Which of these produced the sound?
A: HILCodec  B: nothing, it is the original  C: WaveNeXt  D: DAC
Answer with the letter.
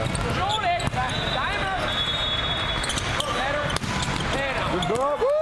B